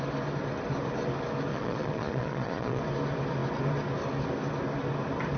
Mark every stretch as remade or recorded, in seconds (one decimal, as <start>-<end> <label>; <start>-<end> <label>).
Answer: 0.0-1.5 recorded; 1.5-2.8 remade; 2.8-5.4 recorded